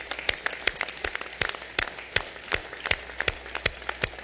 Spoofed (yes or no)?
no